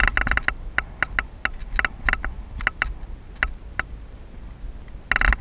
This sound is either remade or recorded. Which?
recorded